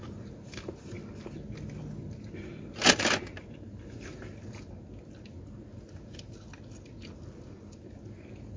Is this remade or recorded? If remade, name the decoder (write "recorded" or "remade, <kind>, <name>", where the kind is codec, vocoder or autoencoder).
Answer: recorded